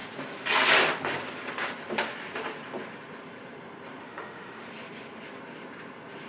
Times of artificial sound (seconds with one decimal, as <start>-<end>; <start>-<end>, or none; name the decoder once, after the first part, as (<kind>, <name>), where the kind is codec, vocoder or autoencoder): 4.0-4.7 (autoencoder, DAC-VAE)